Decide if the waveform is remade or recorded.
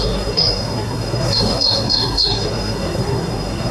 remade